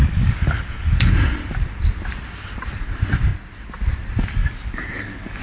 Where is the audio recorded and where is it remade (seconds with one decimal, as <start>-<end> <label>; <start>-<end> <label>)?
0.0-1.1 remade; 1.1-4.4 recorded; 4.4-5.4 remade